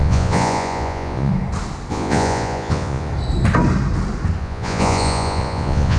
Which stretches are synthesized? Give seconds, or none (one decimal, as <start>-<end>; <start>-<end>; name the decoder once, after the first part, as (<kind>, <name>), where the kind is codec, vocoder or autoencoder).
0.0-1.3 (vocoder, Vocos); 1.9-3.1; 4.4-6.0